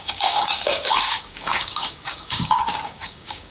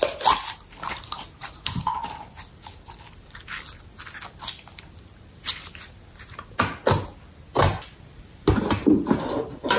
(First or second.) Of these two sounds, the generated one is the first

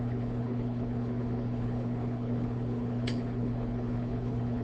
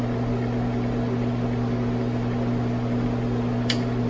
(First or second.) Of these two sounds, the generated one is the first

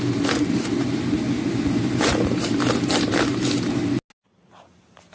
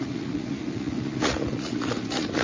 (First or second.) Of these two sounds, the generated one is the second